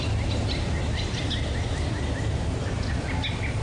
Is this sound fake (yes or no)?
no